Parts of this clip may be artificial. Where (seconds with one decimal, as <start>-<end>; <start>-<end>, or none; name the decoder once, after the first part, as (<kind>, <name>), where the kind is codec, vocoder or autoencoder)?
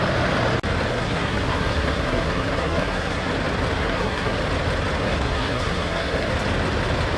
0.9-3.3 (codec, SNAC); 3.8-4.4; 5.0-6.3